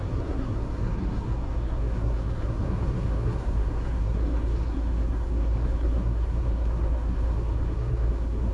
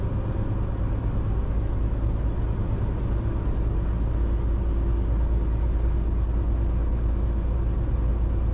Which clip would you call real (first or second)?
second